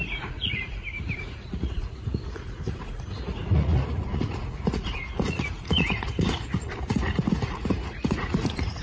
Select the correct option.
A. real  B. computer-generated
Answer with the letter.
B